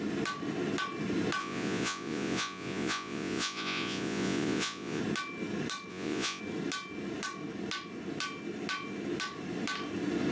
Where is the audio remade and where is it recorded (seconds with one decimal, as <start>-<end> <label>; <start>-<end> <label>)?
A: 0.0-1.4 recorded; 1.4-5.0 remade; 5.0-5.9 recorded; 5.9-6.4 remade; 6.4-10.3 recorded